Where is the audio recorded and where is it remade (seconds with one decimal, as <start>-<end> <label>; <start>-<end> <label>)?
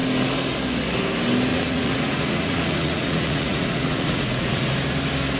0.0-1.5 recorded; 1.5-4.7 remade; 4.7-5.4 recorded